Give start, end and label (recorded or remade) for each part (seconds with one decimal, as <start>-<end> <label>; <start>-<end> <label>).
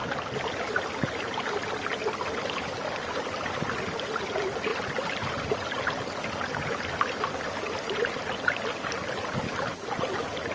0.0-10.5 recorded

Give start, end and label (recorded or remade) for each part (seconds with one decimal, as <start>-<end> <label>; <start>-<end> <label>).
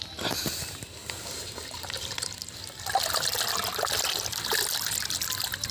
0.0-1.0 recorded; 1.0-2.8 remade; 2.8-5.7 recorded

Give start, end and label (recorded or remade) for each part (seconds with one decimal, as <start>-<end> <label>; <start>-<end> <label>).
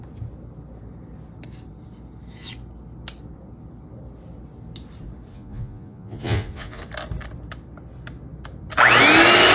0.0-5.3 recorded; 5.3-6.8 remade; 6.8-9.5 recorded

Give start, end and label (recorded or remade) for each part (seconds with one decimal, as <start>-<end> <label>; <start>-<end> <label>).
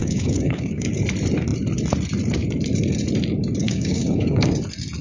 0.0-0.9 remade; 0.9-3.6 recorded; 3.6-4.5 remade; 4.5-5.0 recorded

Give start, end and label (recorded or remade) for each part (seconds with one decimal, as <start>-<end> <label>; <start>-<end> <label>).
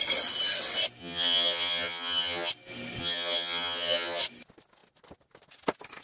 0.0-1.0 recorded; 1.0-2.5 remade; 2.5-3.0 recorded; 3.0-4.2 remade; 4.2-6.0 recorded